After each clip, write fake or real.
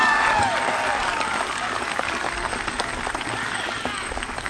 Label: fake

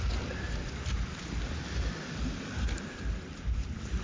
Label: real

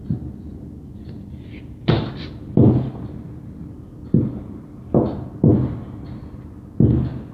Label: real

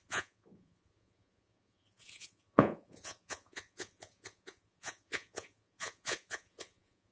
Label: fake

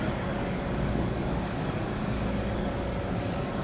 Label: fake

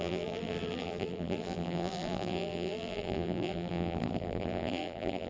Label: fake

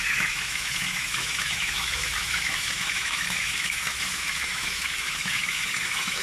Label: fake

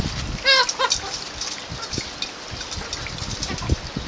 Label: real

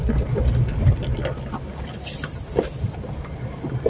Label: real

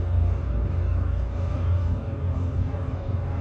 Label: fake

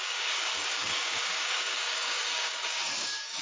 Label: fake